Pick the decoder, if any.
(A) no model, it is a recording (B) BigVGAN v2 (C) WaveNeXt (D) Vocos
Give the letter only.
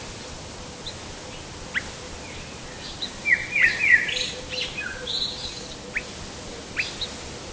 A